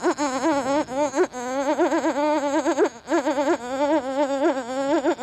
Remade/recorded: recorded